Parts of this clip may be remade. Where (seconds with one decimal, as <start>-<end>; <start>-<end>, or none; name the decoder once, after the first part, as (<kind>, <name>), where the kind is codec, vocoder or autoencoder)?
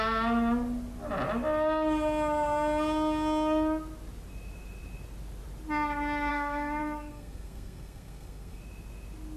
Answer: 6.3-8.6 (codec, SNAC)